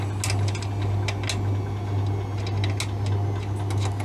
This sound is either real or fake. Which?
real